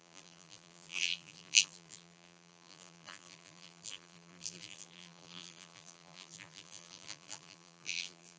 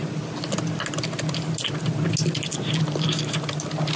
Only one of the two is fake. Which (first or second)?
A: first